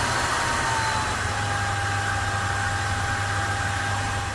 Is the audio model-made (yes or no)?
no